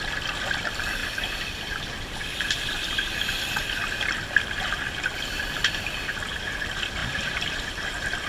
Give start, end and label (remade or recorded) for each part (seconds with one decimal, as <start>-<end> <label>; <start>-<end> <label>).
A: 0.0-7.0 recorded; 7.0-8.3 remade